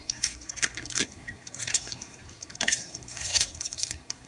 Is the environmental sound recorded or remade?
remade